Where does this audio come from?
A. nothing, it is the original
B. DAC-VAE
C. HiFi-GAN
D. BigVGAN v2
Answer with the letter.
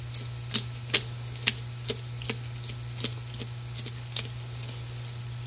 A